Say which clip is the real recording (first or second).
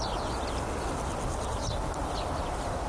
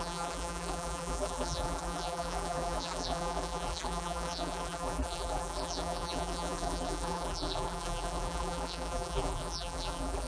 first